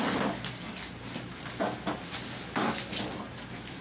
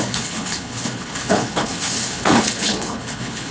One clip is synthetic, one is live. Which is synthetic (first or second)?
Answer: second